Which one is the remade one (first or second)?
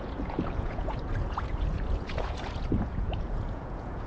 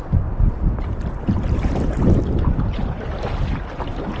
first